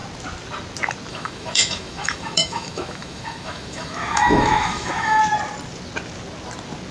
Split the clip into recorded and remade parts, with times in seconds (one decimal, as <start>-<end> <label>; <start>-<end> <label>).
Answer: 0.0-1.1 recorded; 1.1-5.2 remade; 5.2-6.9 recorded